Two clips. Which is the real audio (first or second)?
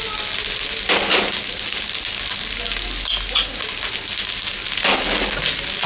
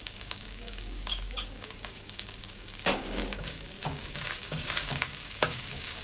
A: first